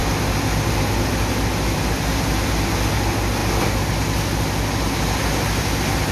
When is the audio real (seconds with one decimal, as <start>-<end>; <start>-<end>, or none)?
0.0-6.1